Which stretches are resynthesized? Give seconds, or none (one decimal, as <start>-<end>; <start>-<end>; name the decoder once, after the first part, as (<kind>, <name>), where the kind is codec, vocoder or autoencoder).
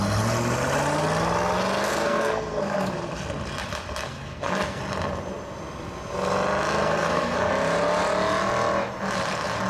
1.9-2.9 (codec, SNAC); 4.1-4.8; 6.8-7.5